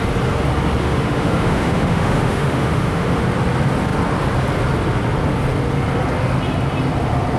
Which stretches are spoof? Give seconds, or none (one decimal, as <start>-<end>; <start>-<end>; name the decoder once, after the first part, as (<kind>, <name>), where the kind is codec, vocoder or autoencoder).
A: 0.8-3.2 (autoencoder, DAC-VAE)